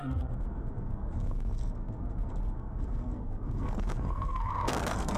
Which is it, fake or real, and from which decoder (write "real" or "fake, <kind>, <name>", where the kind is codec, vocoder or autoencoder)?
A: fake, codec, SNAC